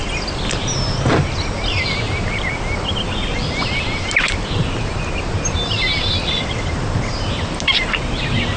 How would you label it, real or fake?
real